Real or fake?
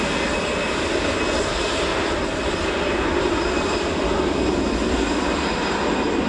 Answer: real